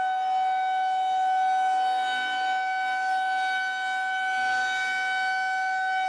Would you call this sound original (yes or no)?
yes